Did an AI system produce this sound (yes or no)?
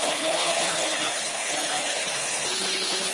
yes